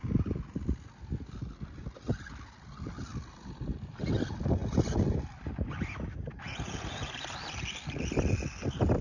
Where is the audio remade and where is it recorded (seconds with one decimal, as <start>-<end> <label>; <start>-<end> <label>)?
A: 0.0-9.0 recorded